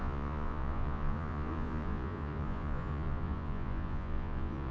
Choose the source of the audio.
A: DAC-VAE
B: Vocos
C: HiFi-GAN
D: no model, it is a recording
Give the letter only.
B